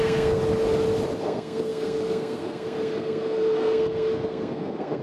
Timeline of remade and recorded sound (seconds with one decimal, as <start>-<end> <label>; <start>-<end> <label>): 0.0-0.4 remade; 0.4-1.2 recorded; 1.2-5.0 remade